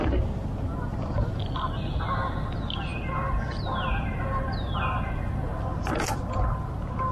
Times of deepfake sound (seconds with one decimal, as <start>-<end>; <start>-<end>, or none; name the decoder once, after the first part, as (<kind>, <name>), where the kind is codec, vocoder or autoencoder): 0.9-1.4 (vocoder, BigVGAN v2)